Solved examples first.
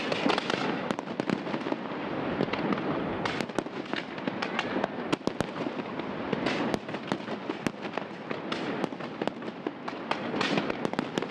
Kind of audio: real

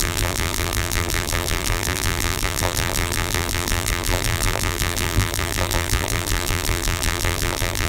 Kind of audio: fake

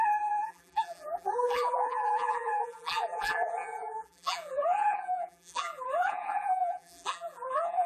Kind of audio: fake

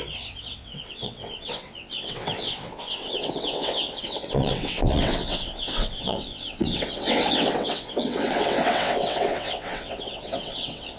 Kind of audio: fake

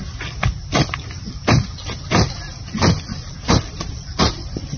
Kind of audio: real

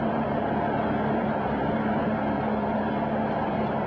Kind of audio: real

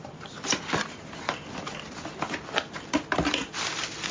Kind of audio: fake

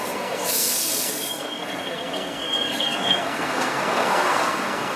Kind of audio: fake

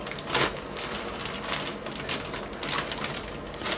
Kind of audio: real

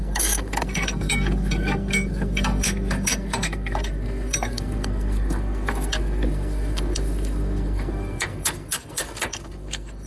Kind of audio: fake